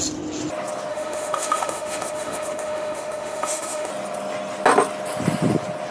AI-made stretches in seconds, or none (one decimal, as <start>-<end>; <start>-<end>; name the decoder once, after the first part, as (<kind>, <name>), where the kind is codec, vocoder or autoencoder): 0.9-3.9 (autoencoder, DAC-VAE)